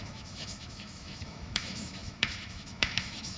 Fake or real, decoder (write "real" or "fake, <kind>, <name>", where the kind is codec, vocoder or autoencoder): fake, autoencoder, DAC-VAE